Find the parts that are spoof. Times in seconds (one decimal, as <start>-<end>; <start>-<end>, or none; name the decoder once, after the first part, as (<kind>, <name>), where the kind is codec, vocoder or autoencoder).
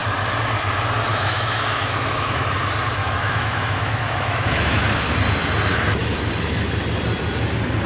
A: 1.1-2.4 (autoencoder, DAC-VAE); 3.0-4.9